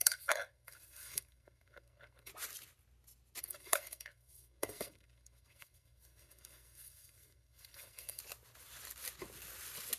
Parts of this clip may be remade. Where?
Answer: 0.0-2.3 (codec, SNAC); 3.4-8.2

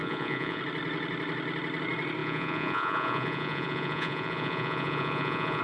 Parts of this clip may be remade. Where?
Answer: 0.0-0.6 (vocoder, Vocos); 2.2-5.6